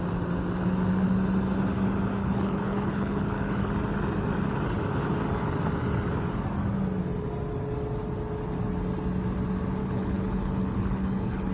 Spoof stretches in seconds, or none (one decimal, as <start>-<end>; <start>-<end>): 2.2-3.7; 9.8-11.5